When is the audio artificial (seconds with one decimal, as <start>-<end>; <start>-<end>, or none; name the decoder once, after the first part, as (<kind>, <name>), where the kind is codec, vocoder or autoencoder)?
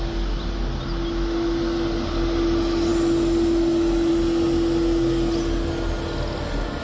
none